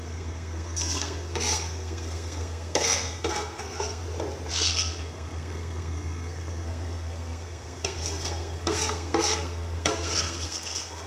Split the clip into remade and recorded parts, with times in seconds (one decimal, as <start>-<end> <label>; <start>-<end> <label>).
0.0-4.0 remade; 4.0-4.5 recorded; 4.5-11.1 remade